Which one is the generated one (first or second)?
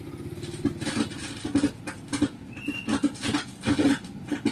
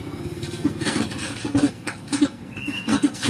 second